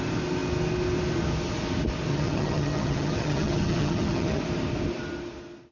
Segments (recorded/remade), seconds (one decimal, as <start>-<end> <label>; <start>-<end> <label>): 0.0-2.1 recorded; 2.1-4.4 remade; 4.4-5.7 recorded